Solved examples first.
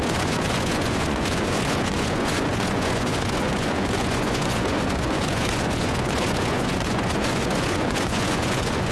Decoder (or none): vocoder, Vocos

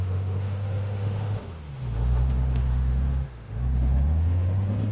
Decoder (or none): autoencoder, DAC-VAE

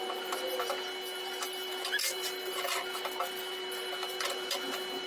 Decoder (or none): none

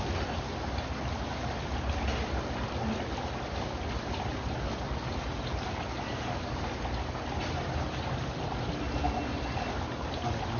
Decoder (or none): none